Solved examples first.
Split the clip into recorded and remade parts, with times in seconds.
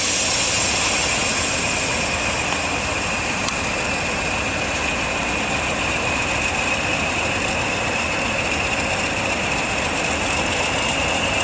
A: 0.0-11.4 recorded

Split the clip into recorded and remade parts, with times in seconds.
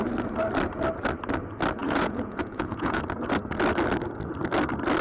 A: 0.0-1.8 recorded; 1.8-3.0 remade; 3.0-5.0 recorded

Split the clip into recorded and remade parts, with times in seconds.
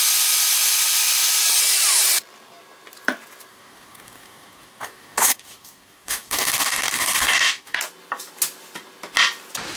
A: 0.0-3.5 recorded; 3.5-7.8 remade; 7.8-9.8 recorded